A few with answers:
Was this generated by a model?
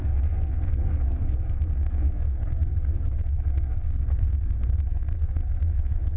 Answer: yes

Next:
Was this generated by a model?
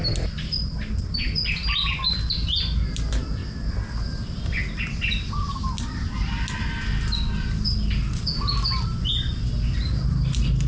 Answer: no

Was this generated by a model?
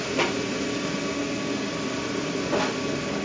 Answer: no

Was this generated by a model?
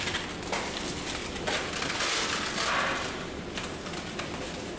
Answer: no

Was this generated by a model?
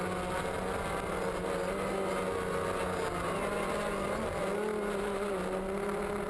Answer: no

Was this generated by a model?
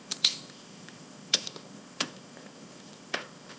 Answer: yes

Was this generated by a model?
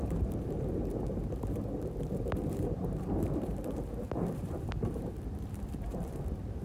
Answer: yes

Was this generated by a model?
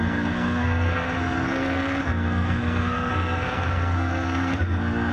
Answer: yes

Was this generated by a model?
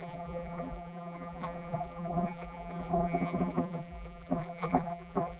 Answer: yes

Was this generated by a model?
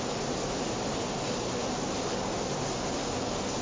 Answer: no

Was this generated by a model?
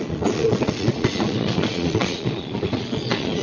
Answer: yes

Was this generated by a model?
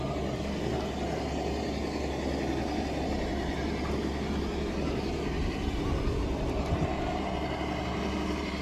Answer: no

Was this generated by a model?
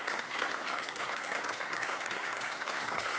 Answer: yes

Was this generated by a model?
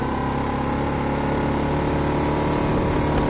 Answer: no